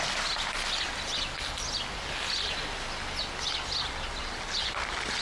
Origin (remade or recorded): recorded